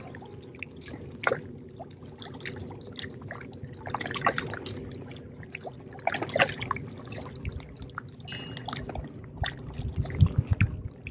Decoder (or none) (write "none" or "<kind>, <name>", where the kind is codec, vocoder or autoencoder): none